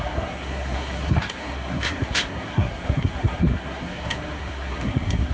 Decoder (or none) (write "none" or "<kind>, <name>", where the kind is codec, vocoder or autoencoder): codec, SNAC